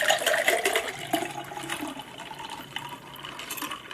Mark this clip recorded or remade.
recorded